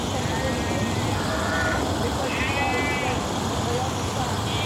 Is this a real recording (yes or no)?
yes